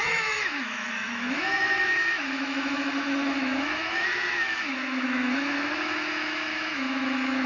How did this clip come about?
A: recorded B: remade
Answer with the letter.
B